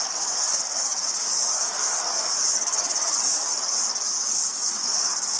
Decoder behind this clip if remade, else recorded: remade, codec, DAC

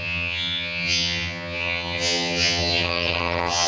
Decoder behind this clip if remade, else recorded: remade, vocoder, HiFi-GAN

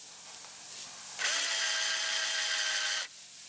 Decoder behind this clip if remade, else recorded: recorded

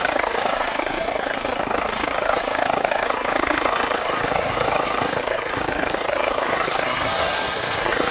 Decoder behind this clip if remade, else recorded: remade, codec, SNAC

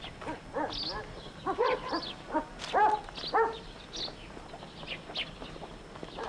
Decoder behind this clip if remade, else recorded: recorded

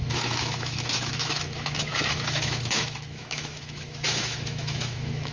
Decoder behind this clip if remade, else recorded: remade, autoencoder, DAC-VAE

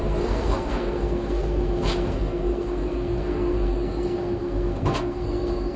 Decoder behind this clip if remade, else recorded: remade, codec, SNAC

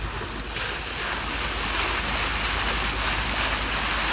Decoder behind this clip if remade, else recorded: recorded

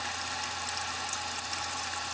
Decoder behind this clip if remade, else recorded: recorded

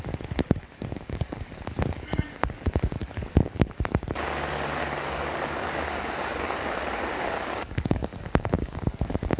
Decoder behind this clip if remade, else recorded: remade, codec, DAC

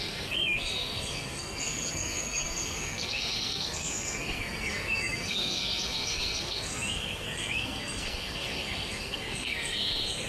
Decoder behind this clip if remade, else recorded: remade, codec, SNAC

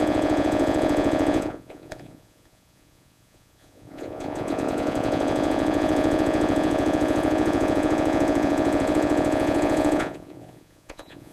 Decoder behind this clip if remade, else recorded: remade, vocoder, Vocos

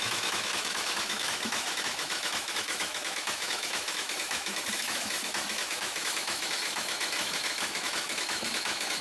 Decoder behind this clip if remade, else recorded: remade, autoencoder, DAC-VAE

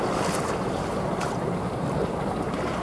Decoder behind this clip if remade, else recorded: remade, vocoder, BigVGAN v2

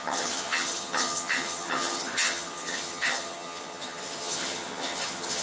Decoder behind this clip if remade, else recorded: remade, vocoder, HiFi-GAN